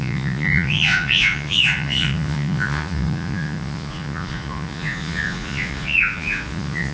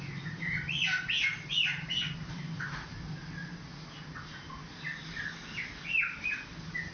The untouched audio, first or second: second